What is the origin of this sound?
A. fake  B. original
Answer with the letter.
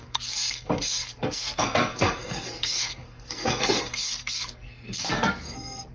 A